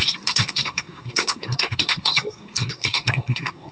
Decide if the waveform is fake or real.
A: fake